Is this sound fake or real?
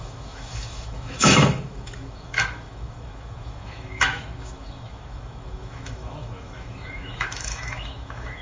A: fake